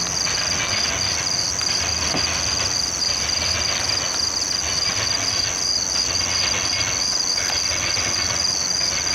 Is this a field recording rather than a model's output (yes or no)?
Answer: yes